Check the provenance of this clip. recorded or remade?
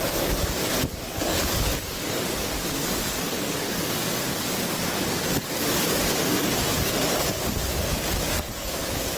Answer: remade